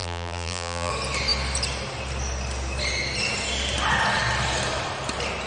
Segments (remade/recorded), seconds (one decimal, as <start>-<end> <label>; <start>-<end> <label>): 0.0-0.9 remade; 0.9-5.5 recorded